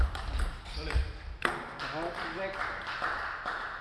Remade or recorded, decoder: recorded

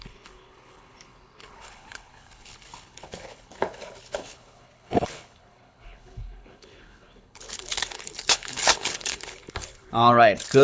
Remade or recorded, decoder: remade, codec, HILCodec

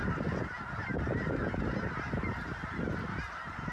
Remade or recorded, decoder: recorded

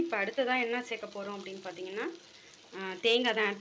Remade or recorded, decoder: recorded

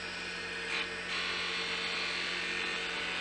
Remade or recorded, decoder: recorded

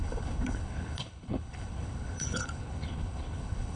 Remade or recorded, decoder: remade, codec, HILCodec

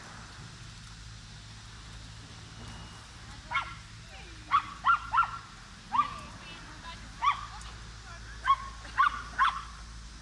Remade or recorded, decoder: recorded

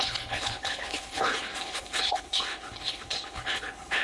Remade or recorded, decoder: remade, codec, HILCodec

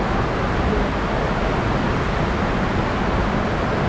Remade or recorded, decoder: recorded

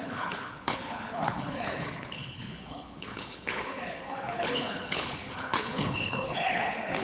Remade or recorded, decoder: remade, codec, HILCodec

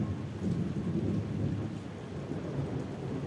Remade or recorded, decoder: recorded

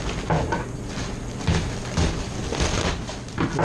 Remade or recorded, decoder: recorded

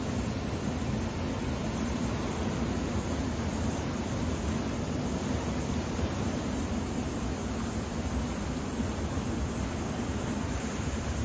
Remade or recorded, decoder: recorded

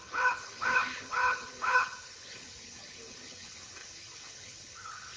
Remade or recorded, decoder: remade, codec, HILCodec